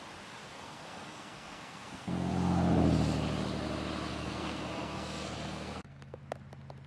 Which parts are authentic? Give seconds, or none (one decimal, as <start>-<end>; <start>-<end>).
0.0-0.4; 2.3-4.1; 6.2-6.9